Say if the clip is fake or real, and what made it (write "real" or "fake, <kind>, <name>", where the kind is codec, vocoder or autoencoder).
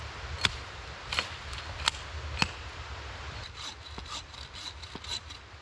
real